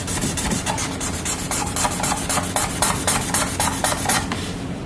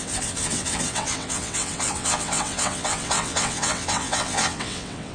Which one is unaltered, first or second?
first